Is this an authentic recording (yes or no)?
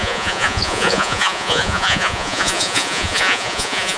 no